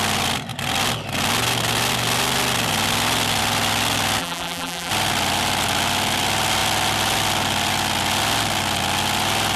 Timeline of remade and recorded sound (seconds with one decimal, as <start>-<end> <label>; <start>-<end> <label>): 0.0-4.2 recorded; 4.2-4.9 remade; 4.9-9.6 recorded